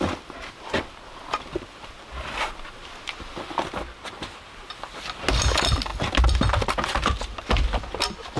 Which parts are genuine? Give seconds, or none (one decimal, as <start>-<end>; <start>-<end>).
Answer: 0.0-8.4